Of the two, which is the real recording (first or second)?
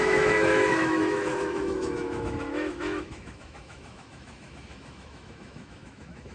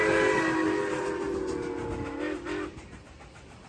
second